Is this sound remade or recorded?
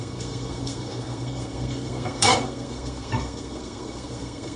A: remade